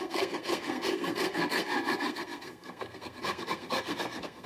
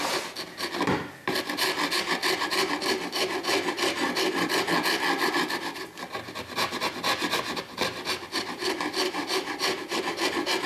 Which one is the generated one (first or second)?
first